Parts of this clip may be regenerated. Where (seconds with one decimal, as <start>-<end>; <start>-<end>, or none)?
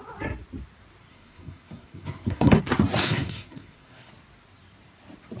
1.1-2.6; 3.0-4.1